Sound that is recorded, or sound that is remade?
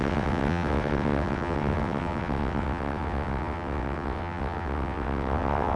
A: remade